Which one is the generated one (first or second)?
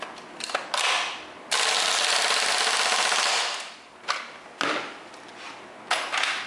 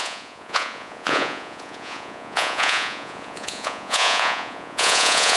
second